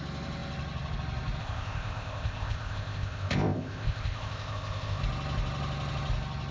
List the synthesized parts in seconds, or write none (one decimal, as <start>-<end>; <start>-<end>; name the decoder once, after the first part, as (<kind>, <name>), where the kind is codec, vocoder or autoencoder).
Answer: 1.4-5.0 (codec, ZipCodec)